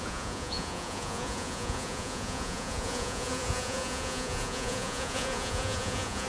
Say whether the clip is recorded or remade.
remade